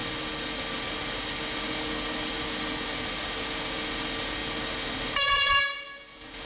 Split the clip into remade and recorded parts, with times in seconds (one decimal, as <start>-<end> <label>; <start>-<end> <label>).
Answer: 0.0-6.5 recorded